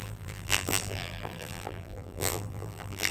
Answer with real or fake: fake